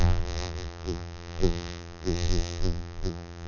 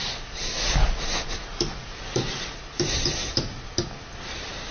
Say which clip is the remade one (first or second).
first